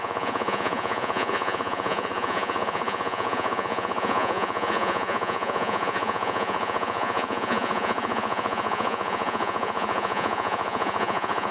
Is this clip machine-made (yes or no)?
yes